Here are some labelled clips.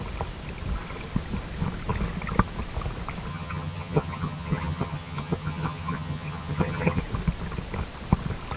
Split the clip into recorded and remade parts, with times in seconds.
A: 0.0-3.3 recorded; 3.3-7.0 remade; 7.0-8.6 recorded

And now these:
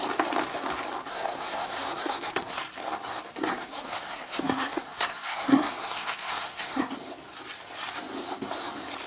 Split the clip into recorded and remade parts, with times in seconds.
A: 0.0-1.1 recorded; 1.1-2.6 remade; 2.6-3.5 recorded; 3.5-6.9 remade; 6.9-9.1 recorded

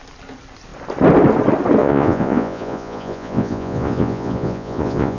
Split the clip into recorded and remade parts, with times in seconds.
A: 0.0-1.8 recorded; 1.8-5.2 remade